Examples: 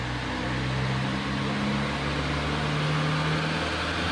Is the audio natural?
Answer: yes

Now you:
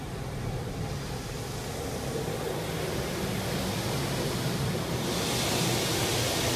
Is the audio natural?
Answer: yes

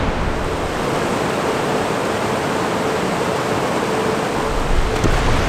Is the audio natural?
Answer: yes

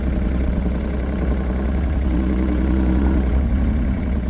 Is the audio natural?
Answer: no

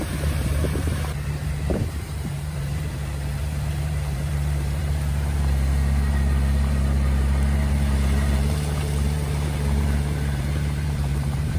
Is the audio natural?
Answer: no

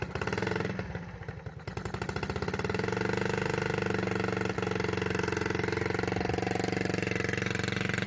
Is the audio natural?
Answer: yes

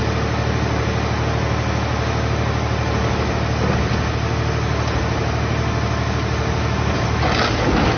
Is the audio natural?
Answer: yes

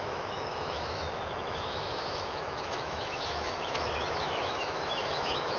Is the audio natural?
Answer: no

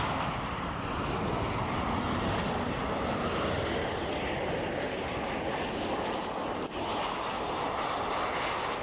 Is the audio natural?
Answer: yes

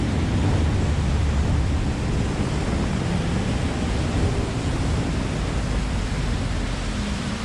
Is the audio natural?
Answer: yes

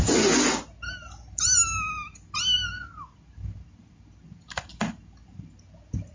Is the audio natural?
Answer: yes